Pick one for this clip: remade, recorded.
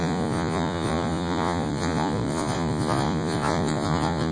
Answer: remade